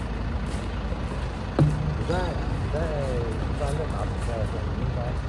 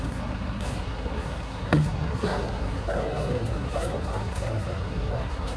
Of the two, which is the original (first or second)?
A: first